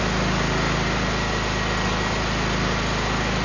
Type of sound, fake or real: real